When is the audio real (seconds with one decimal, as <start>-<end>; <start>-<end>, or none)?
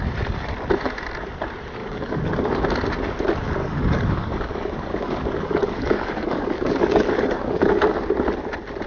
0.0-1.8; 2.5-3.6; 8.0-8.9